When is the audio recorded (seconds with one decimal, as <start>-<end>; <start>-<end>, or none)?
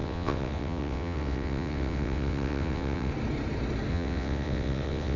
3.1-3.9